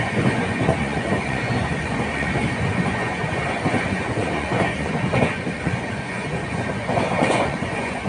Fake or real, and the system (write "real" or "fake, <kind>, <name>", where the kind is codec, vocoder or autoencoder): fake, vocoder, Vocos